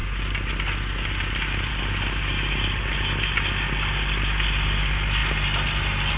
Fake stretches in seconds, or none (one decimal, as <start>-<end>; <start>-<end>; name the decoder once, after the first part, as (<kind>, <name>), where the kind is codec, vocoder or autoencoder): none

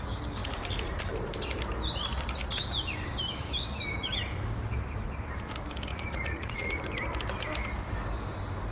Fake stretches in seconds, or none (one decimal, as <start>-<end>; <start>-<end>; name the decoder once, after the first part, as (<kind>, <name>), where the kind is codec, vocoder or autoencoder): 5.9-6.8 (vocoder, Vocos)

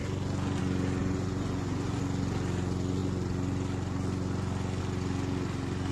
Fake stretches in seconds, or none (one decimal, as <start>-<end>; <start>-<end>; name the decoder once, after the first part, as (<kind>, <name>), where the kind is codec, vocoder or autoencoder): 1.0-2.0 (vocoder, Vocos)

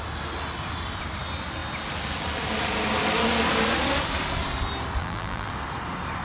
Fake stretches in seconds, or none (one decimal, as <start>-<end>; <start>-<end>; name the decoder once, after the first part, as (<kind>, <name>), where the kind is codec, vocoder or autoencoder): 5.0-5.5 (vocoder, BigVGAN v2)

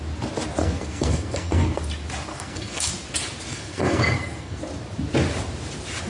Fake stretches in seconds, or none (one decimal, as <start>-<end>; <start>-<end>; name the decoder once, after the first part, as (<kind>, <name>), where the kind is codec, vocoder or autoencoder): 0.6-1.8 (codec, SNAC); 2.3-2.9; 3.5-4.6